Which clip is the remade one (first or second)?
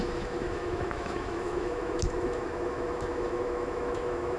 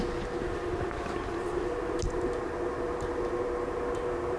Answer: first